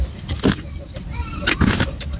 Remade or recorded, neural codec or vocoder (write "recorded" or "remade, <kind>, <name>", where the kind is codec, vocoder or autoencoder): recorded